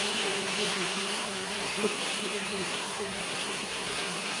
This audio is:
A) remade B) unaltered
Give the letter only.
A